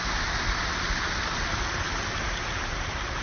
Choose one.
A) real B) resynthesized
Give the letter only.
A